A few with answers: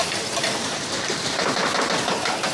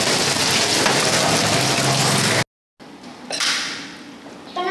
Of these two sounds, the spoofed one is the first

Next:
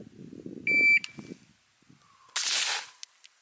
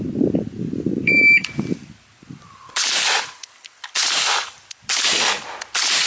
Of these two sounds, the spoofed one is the second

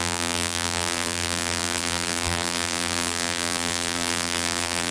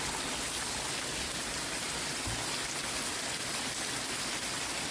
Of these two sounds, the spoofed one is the first